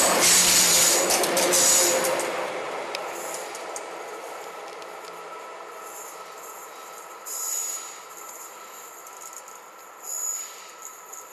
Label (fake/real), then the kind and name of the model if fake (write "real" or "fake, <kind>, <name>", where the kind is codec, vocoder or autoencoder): real